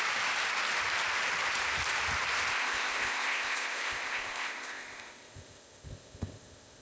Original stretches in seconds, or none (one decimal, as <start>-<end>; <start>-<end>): 0.0-2.5